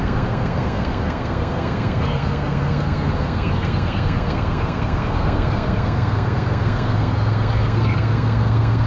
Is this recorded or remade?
remade